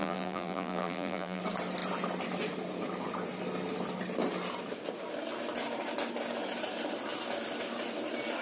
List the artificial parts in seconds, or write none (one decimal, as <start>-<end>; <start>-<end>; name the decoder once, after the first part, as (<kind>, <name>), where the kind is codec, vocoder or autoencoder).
0.0-1.4 (vocoder, BigVGAN v2)